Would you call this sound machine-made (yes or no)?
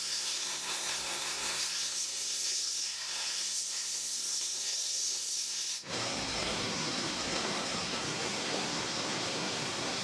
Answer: yes